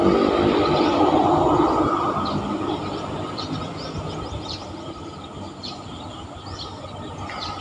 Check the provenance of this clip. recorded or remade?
recorded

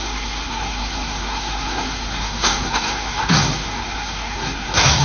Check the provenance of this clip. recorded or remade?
remade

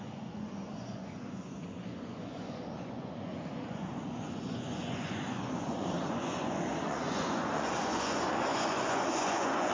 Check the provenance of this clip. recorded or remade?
remade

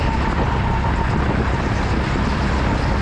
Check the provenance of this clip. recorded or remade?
recorded